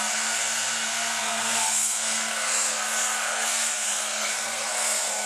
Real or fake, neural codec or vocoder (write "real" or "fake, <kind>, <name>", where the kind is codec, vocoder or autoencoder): fake, codec, SNAC